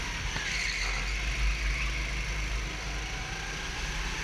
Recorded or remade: recorded